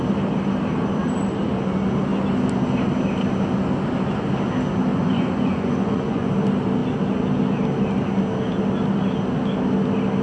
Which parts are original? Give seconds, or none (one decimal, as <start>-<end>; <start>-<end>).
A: 0.0-4.9; 6.3-10.2